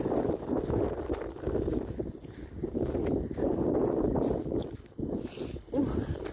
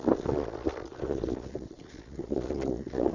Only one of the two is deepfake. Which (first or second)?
second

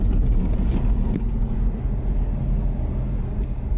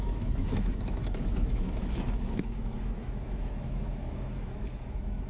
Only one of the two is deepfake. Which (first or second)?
second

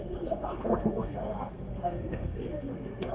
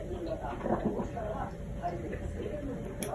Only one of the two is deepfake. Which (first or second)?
first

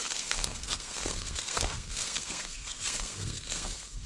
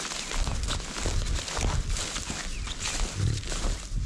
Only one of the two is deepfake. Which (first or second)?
first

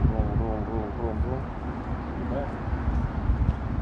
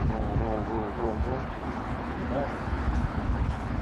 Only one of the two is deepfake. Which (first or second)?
second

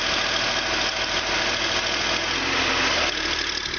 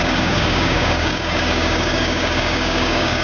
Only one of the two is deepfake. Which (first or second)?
second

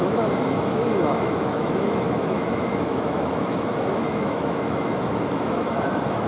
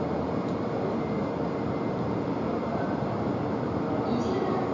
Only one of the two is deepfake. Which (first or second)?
first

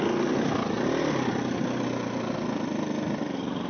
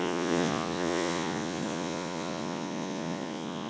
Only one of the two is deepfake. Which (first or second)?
second